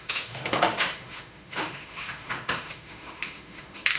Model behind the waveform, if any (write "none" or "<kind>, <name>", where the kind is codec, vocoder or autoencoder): autoencoder, DAC-VAE